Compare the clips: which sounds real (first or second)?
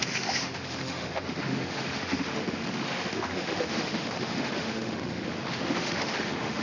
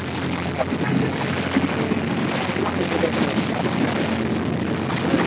second